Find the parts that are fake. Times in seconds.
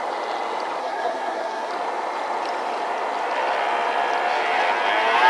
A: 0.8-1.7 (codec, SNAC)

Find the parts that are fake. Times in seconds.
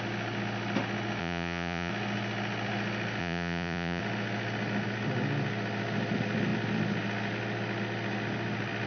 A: 1.2-1.9 (vocoder, Vocos); 3.2-4.0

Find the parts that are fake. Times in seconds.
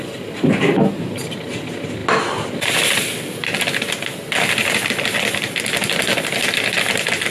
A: none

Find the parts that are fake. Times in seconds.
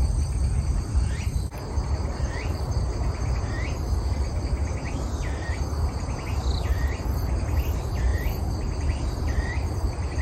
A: 0.0-2.6 (vocoder, BigVGAN v2); 8.1-10.2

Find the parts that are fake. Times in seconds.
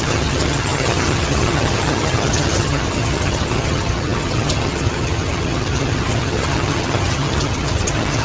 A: 0.0-8.2 (vocoder, HiFi-GAN)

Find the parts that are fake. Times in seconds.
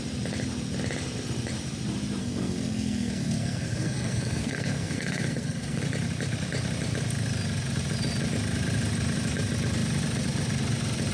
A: 2.2-5.8 (codec, SNAC)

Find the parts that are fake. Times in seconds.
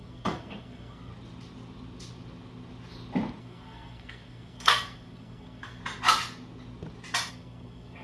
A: 0.0-1.1 (codec, SNAC); 3.4-5.8; 7.3-8.0